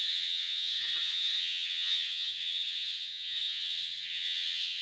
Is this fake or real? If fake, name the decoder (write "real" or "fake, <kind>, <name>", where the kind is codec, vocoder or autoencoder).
fake, vocoder, HiFi-GAN